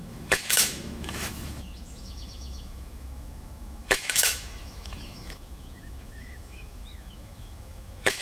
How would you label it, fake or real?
fake